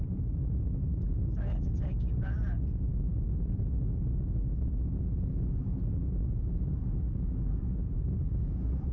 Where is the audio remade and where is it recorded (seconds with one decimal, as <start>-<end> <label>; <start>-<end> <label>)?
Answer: 0.0-1.3 remade; 1.3-2.1 recorded; 2.1-8.9 remade